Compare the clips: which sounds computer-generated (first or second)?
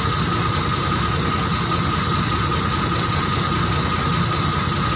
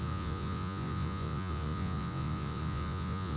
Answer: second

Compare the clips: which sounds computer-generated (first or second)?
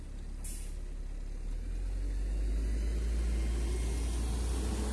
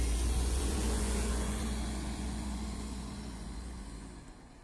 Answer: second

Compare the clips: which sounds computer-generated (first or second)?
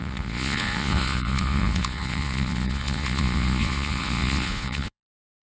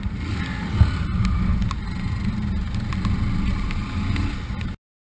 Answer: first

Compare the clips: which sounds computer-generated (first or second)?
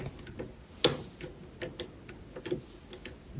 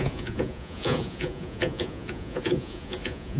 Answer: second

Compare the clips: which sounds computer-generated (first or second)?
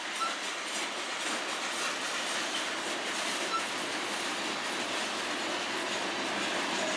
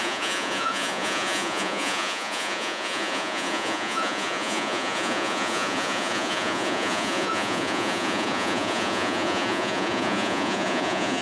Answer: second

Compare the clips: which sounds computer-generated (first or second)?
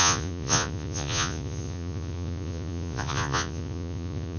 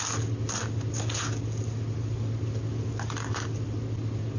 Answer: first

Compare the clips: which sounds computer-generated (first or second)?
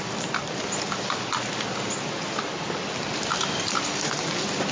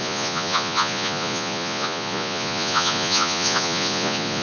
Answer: second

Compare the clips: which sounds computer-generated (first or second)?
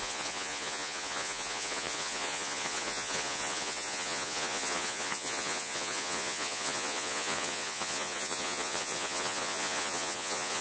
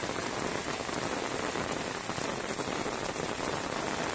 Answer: first